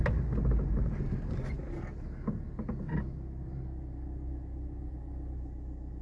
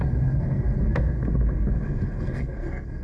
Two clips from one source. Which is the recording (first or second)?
first